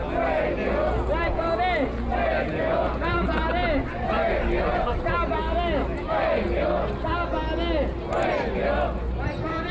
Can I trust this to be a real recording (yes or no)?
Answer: yes